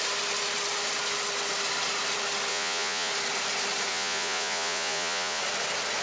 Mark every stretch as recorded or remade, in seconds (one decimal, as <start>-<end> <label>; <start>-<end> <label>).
0.0-2.5 recorded; 2.5-3.1 remade; 3.1-3.9 recorded; 3.9-5.4 remade; 5.4-6.0 recorded